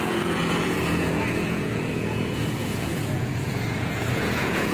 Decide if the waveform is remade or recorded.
remade